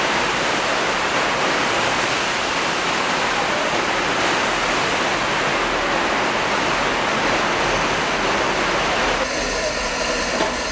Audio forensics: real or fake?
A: real